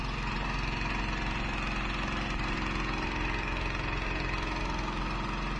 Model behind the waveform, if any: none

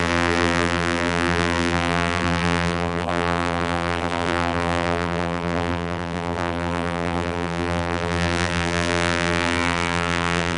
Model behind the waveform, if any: vocoder, BigVGAN v2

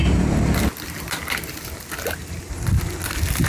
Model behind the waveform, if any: none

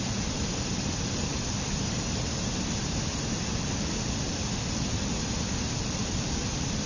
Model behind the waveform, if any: none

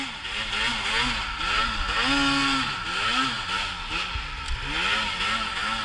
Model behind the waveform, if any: none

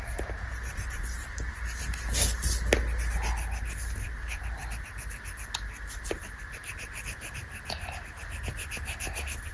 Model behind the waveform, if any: none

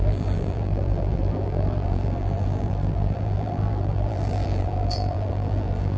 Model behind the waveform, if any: vocoder, BigVGAN v2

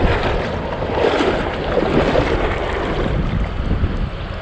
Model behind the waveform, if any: none